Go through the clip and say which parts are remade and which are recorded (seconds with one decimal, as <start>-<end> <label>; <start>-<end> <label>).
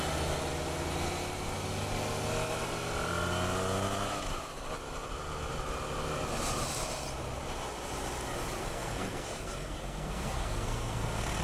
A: 0.0-8.6 recorded; 8.6-11.4 remade